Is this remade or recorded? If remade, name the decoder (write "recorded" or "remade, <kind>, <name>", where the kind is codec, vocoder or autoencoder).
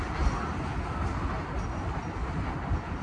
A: recorded